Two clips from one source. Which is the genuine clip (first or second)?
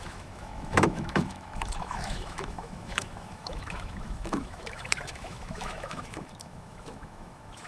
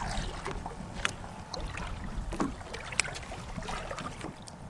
second